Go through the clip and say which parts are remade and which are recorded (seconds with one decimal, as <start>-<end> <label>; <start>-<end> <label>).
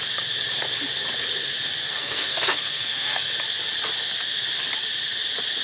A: 0.0-1.8 recorded; 1.8-3.3 remade; 3.3-5.6 recorded